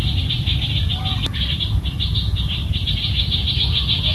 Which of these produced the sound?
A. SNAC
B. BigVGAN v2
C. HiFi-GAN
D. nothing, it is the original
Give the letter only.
D